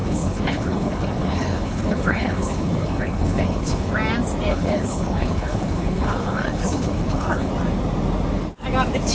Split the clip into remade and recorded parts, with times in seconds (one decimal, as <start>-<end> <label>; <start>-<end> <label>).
0.0-3.9 remade; 3.9-4.5 recorded; 4.5-7.5 remade; 7.5-9.1 recorded